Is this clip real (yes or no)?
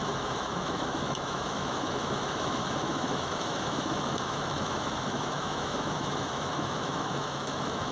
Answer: no